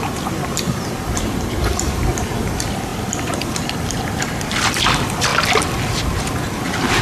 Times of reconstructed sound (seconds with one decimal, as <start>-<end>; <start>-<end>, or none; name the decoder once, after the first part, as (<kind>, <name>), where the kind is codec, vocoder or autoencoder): 0.0-7.0 (vocoder, BigVGAN v2)